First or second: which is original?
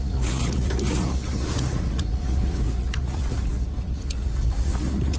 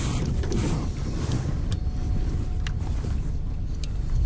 second